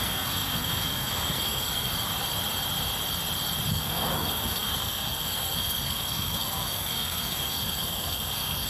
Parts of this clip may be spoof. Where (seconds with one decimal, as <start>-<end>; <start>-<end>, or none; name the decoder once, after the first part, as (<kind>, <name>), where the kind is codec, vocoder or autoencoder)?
0.0-1.9 (codec, SNAC); 3.7-8.7